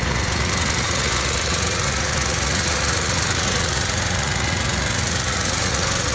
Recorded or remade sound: remade